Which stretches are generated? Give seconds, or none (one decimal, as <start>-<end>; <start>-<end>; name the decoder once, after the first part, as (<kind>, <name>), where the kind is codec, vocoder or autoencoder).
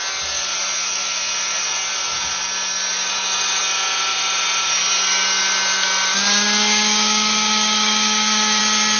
6.1-8.6 (codec, DAC)